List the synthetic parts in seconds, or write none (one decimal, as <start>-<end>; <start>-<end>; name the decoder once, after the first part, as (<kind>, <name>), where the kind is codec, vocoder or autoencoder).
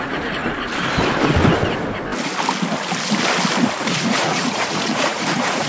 0.0-0.4 (vocoder, Vocos); 3.8-5.7